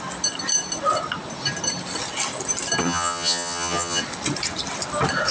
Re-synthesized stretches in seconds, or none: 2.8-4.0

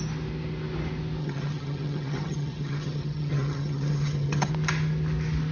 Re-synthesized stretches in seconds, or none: 1.2-4.5

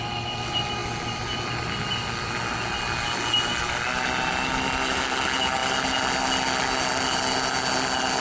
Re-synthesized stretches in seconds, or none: none